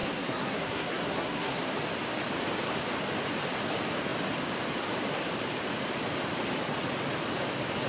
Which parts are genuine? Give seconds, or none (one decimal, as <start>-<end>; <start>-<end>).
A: 1.6-7.9